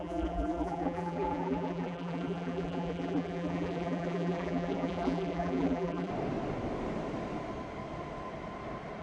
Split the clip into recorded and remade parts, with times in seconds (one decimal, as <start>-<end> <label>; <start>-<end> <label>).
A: 0.0-6.1 remade; 6.1-9.0 recorded